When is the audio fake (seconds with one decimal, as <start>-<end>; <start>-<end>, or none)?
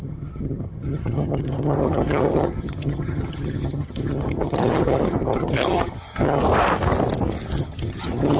0.0-6.4; 7.6-8.4